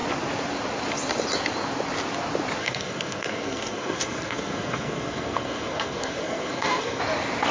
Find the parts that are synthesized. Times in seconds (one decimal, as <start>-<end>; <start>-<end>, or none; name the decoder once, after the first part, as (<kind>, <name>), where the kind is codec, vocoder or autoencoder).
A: 2.6-7.0 (codec, SNAC)